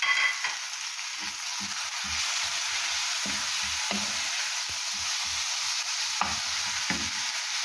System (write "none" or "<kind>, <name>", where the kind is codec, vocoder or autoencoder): none